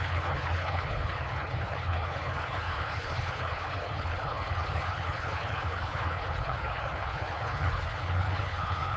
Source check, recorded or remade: remade